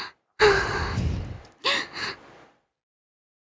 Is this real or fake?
real